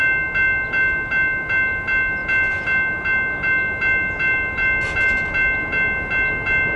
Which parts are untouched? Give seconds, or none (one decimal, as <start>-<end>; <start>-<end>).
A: 0.0-6.8